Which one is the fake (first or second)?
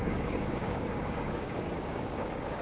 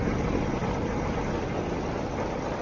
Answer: first